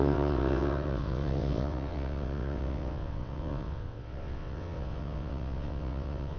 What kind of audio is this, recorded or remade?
remade